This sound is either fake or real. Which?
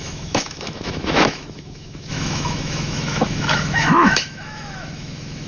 fake